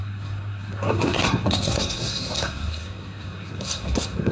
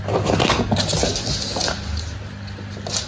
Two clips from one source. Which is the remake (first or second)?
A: first